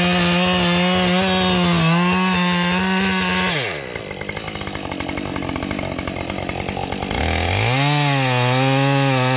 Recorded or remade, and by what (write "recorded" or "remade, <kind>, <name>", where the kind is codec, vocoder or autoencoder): recorded